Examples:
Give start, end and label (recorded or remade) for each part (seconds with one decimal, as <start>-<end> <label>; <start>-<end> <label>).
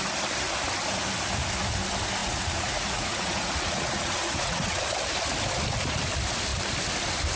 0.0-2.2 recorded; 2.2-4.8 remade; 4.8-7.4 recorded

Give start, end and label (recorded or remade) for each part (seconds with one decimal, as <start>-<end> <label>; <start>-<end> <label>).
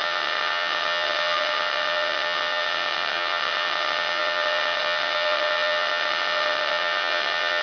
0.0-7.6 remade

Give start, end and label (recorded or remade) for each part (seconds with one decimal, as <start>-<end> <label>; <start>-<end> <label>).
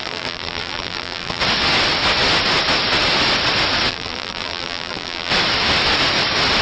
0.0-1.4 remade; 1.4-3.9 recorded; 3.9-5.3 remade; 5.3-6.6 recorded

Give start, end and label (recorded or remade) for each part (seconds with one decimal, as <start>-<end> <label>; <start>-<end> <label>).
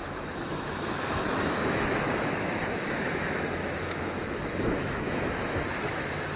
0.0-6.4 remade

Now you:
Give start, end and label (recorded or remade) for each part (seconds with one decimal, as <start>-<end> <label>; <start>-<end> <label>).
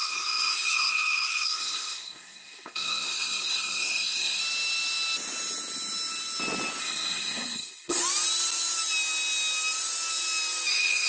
0.0-4.4 remade; 4.4-6.8 recorded; 6.8-8.0 remade; 8.0-10.7 recorded; 10.7-11.1 remade